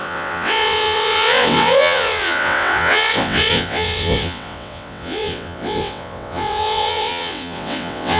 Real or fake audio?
fake